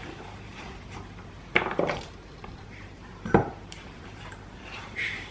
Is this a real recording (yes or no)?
no